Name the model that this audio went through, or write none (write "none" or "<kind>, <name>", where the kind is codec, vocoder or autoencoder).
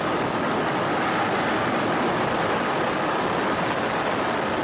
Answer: none